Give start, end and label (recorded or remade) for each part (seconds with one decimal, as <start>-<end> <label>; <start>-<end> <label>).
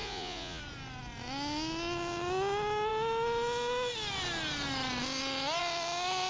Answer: 0.0-0.6 remade; 0.6-6.3 recorded